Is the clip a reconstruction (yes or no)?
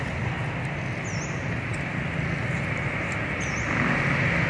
no